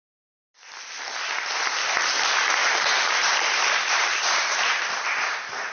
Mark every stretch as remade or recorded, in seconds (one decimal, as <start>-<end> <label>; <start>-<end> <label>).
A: 0.0-2.6 recorded; 2.6-4.9 remade; 4.9-5.7 recorded